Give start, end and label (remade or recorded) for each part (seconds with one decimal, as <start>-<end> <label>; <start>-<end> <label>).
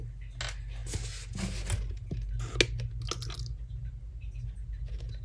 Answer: 0.0-5.2 recorded